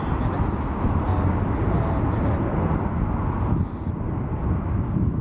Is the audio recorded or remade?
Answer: recorded